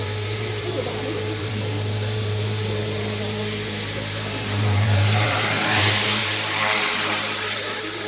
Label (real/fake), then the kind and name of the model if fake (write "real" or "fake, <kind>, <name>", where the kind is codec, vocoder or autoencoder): fake, vocoder, BigVGAN v2